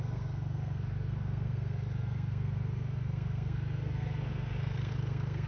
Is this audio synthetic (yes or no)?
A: yes